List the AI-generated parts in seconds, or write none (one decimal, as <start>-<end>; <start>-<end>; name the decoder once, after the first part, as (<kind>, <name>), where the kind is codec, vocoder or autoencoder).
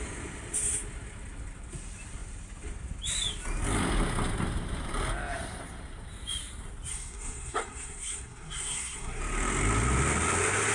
6.9-9.2 (codec, SNAC)